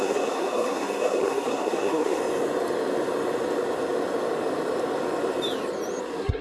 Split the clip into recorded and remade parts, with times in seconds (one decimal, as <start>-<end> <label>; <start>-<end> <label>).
0.0-2.2 remade; 2.2-6.0 recorded; 6.0-6.4 remade